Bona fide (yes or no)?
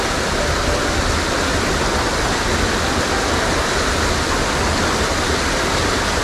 yes